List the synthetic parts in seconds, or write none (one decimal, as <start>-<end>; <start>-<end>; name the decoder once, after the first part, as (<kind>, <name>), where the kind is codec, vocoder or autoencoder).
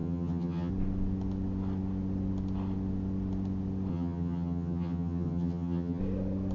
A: 0.0-0.7 (vocoder, HiFi-GAN); 3.9-6.0